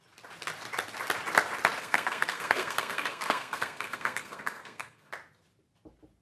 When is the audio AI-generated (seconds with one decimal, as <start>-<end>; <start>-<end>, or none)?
1.8-5.1